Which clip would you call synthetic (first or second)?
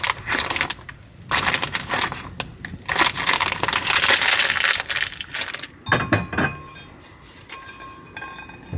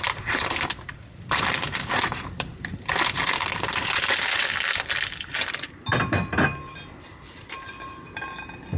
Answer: second